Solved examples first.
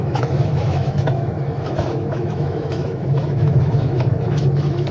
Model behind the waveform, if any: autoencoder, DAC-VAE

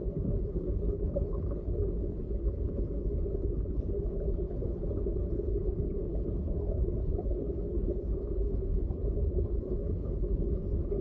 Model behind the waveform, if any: codec, HILCodec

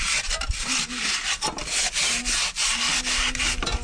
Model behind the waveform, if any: none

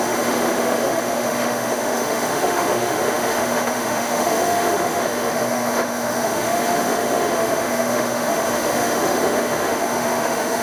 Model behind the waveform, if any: autoencoder, DAC-VAE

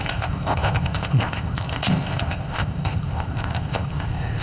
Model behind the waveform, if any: codec, ZipCodec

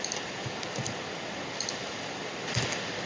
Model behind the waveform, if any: none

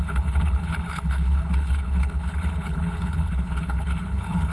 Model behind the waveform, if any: codec, HILCodec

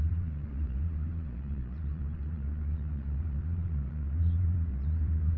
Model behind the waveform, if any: vocoder, Vocos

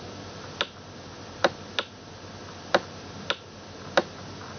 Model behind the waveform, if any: none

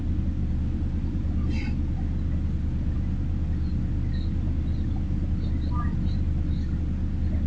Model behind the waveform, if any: none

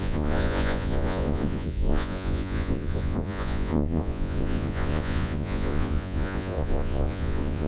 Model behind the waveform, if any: vocoder, Vocos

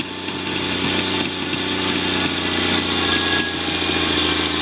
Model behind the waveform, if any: none